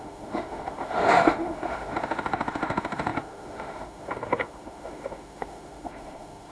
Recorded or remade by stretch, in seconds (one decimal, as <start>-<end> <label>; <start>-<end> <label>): 0.0-6.5 remade